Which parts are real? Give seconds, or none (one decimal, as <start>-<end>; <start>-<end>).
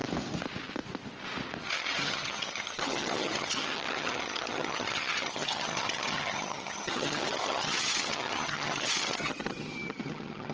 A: 0.0-1.6